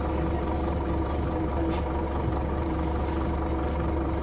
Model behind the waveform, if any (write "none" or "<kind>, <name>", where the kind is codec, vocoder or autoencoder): vocoder, BigVGAN v2